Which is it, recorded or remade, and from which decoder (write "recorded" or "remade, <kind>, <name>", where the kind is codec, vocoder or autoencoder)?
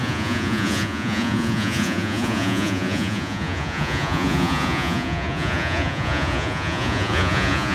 remade, vocoder, Vocos